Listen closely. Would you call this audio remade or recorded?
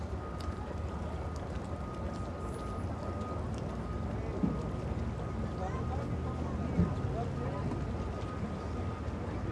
recorded